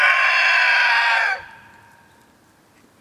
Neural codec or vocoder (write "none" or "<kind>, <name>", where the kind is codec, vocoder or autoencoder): none